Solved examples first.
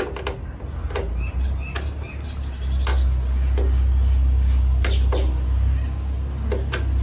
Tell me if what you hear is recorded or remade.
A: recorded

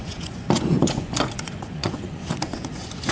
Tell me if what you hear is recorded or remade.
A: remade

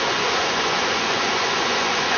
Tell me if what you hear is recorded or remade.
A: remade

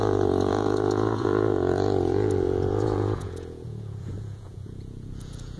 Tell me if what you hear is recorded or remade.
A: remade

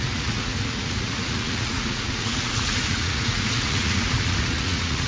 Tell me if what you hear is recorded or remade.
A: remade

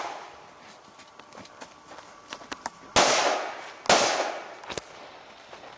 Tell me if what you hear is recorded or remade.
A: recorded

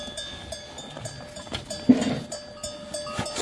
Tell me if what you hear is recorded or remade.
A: recorded